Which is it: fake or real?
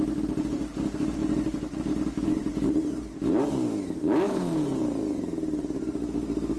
real